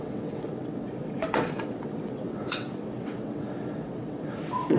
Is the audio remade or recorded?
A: remade